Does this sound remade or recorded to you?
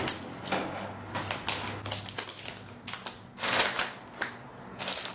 recorded